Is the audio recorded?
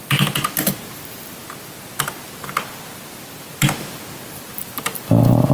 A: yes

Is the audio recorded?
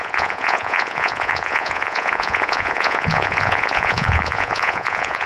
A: no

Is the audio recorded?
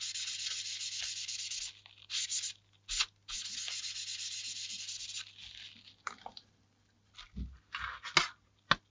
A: yes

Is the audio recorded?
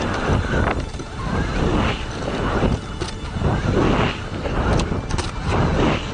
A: yes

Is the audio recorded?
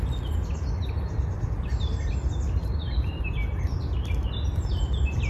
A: yes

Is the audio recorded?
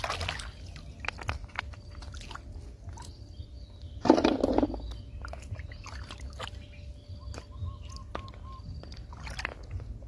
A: yes